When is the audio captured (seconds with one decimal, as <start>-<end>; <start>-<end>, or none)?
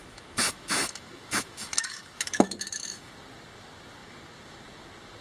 3.1-5.2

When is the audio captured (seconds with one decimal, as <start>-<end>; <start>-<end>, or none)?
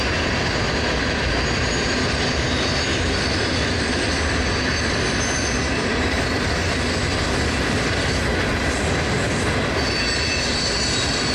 0.0-2.9; 7.9-11.3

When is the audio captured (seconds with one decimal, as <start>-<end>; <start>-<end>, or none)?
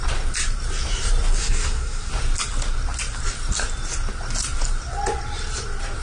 0.0-1.4; 2.1-6.0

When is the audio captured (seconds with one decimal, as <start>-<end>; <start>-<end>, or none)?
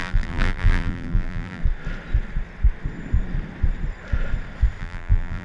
1.6-4.8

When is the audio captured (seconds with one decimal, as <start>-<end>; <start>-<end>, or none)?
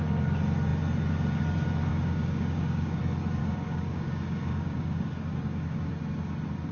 0.0-1.9; 3.0-3.4; 5.9-6.7